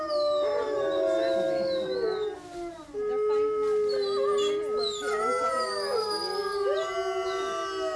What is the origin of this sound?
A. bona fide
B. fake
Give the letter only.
A